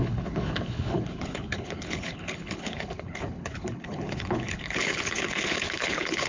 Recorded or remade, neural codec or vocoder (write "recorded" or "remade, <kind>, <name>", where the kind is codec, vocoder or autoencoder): remade, codec, HILCodec